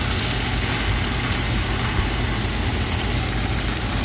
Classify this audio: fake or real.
real